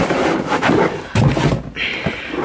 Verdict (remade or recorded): recorded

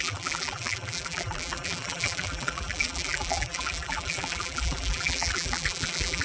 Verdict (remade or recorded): remade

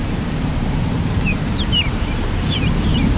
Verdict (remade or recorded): remade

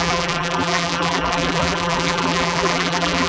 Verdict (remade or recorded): remade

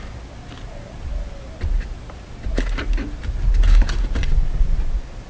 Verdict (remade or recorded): recorded